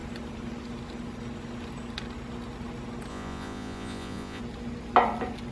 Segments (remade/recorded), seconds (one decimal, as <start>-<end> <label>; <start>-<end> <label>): 0.0-3.1 recorded; 3.1-4.4 remade; 4.4-5.5 recorded